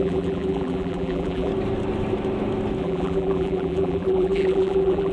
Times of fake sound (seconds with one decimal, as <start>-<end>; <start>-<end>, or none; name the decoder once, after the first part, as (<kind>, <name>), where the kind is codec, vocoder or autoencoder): 0.0-1.5 (vocoder, BigVGAN v2); 2.8-5.1